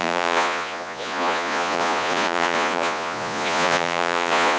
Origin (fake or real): fake